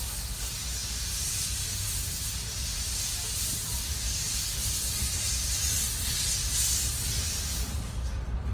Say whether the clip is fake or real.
real